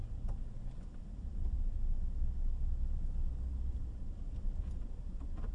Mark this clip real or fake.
real